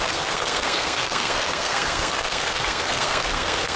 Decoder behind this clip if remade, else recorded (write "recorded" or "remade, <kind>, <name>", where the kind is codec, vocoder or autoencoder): remade, codec, SNAC